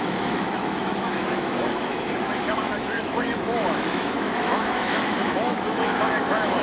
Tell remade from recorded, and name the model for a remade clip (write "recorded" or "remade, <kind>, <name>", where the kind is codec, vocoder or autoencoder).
remade, autoencoder, DAC-VAE